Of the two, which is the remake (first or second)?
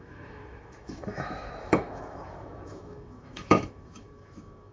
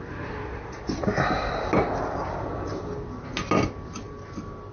first